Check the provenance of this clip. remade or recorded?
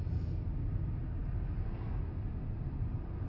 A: recorded